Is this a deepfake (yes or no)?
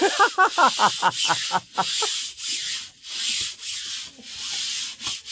no